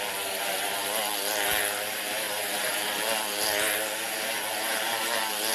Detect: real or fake fake